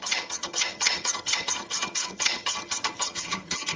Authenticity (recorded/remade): remade